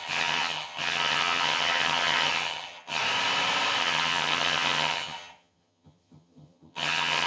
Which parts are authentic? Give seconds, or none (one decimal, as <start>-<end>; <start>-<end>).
3.0-3.8